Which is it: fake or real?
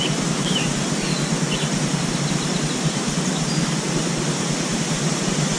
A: real